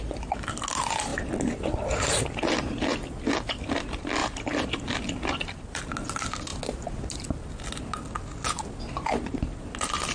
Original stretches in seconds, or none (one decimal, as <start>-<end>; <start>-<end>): 0.0-4.2; 4.8-10.1